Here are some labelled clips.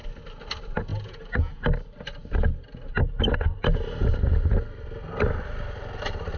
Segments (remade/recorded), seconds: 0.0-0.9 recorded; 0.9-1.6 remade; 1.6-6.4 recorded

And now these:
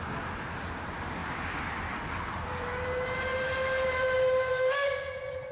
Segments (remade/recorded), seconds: 0.0-5.5 recorded